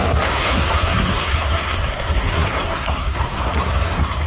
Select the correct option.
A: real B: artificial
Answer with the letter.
B